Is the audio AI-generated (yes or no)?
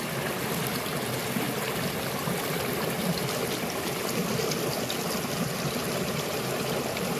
no